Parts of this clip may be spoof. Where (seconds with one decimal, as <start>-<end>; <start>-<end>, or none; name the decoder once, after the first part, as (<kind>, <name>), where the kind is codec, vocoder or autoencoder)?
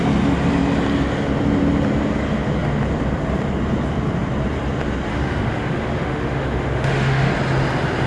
5.1-7.3 (autoencoder, DAC-VAE)